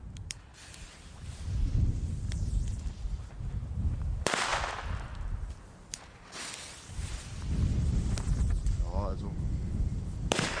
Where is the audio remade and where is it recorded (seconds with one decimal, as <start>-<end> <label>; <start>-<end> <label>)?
0.0-0.5 remade; 0.5-2.1 recorded; 2.1-10.6 remade